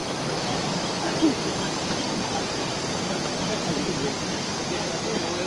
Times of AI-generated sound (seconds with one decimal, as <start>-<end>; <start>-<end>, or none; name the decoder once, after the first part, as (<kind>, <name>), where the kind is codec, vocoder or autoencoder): none